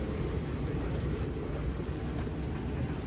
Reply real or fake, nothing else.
real